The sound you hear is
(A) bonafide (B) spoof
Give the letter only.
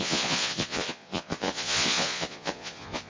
B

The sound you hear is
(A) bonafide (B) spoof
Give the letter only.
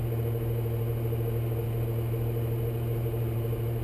A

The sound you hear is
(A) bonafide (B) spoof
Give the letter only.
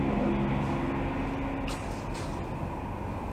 A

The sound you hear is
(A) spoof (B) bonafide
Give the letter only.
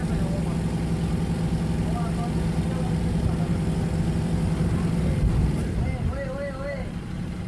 B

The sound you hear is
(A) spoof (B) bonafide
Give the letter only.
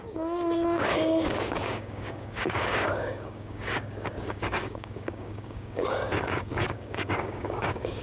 A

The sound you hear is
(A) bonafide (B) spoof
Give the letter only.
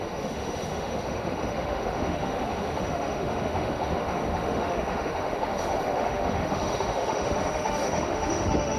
B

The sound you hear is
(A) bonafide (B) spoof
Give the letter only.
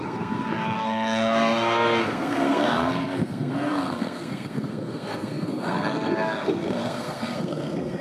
B